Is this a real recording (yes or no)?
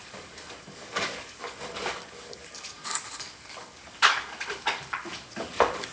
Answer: no